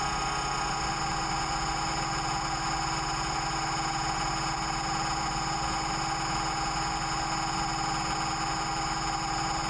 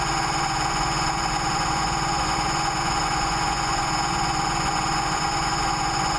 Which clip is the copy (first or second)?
second